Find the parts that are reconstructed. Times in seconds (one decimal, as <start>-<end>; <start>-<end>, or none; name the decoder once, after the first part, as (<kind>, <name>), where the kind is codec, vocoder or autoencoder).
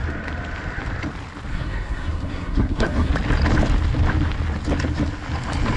1.5-3.1 (codec, SNAC)